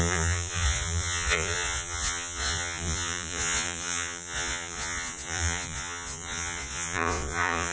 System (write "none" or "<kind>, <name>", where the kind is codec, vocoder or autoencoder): vocoder, Vocos